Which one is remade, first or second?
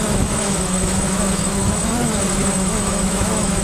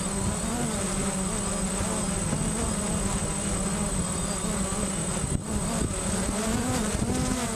first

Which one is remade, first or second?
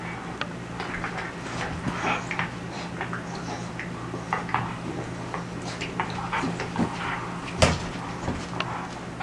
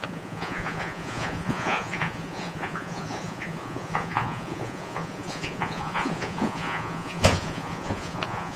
second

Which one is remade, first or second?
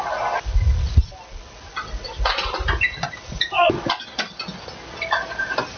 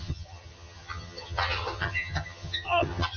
second